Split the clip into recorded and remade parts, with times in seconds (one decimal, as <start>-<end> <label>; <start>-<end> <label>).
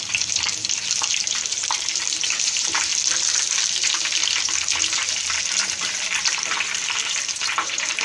0.0-2.9 remade; 2.9-4.4 recorded; 4.4-8.0 remade